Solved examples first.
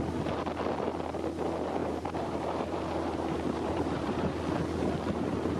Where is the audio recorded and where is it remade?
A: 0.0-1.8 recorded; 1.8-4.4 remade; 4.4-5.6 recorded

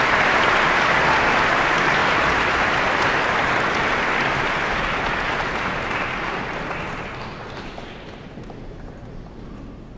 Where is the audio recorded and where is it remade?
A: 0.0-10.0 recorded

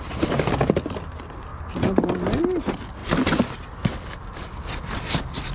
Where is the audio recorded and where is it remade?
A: 0.0-3.0 recorded; 3.0-3.7 remade; 3.7-5.5 recorded

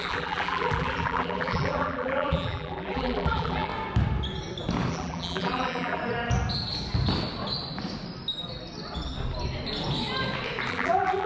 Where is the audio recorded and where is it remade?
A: 0.0-3.7 remade; 3.7-4.9 recorded; 4.9-6.0 remade; 6.0-10.7 recorded; 10.7-11.3 remade

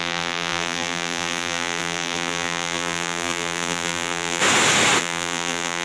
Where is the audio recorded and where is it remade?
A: 0.0-4.4 remade; 4.4-5.0 recorded; 5.0-5.8 remade

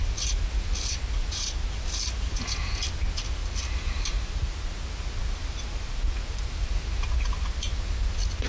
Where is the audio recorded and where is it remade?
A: 0.0-3.4 recorded; 3.4-4.7 remade; 4.7-5.2 recorded; 5.2-6.8 remade; 6.8-8.5 recorded